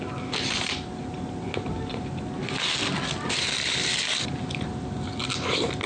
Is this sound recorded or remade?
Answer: recorded